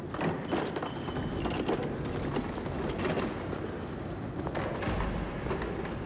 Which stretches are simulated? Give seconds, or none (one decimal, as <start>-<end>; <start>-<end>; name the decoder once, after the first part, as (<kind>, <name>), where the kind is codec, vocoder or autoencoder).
none